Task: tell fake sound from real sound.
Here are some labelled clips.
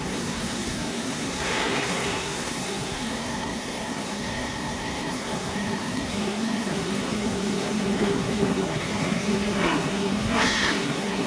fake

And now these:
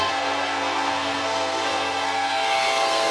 fake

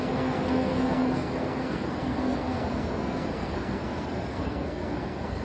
fake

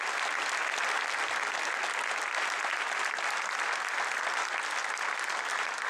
real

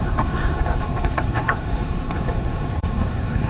fake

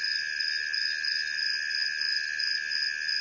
real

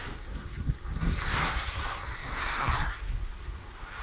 fake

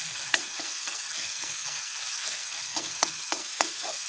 fake